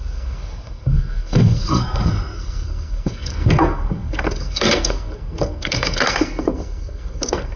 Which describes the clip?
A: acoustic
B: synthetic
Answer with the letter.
B